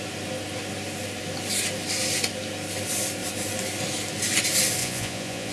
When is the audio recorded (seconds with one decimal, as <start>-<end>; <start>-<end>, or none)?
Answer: 0.0-4.8